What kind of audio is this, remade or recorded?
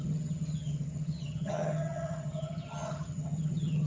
remade